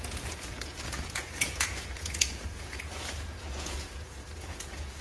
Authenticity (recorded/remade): remade